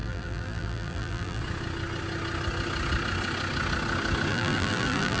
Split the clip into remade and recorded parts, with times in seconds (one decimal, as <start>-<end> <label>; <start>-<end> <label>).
0.0-1.4 remade; 1.4-4.3 recorded; 4.3-5.2 remade